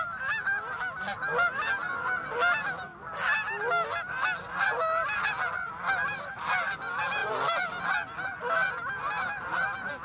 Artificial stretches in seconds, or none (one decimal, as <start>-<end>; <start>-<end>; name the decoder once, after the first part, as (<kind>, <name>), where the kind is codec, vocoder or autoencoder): none